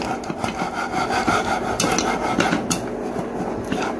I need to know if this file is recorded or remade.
recorded